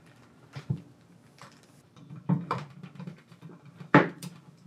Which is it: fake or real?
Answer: fake